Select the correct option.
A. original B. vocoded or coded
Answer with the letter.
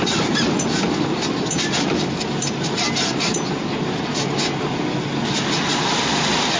A